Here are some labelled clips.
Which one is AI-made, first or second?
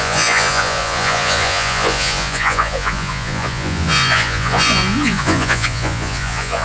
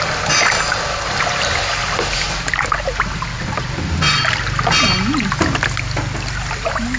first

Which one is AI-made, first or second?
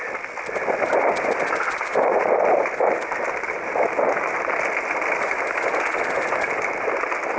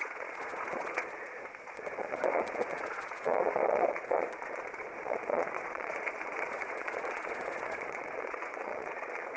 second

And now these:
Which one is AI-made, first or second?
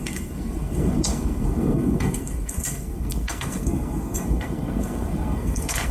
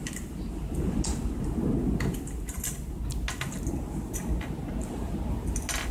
first